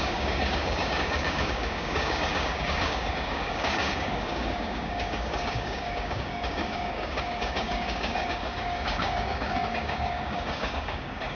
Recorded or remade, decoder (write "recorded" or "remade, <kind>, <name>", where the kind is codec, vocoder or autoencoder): remade, codec, DAC